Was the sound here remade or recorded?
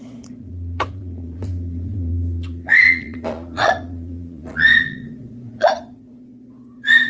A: remade